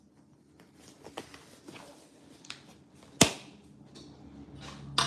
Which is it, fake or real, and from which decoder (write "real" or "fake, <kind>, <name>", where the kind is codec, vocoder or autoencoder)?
real